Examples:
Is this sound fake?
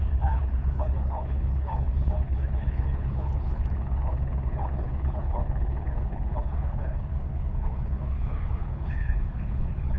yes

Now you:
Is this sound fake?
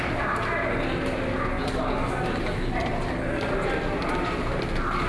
no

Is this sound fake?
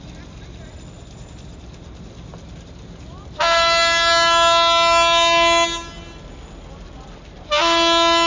no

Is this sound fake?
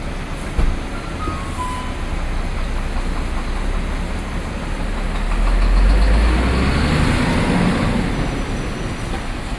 no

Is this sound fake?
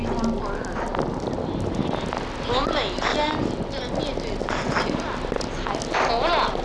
no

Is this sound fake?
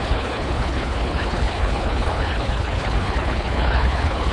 yes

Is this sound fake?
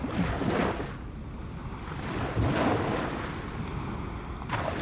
no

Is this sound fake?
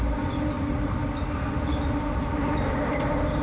no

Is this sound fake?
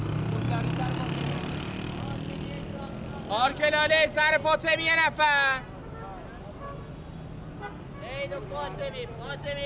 no